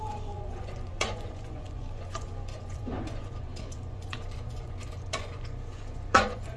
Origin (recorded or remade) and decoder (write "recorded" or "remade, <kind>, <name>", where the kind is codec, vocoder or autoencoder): remade, vocoder, Vocos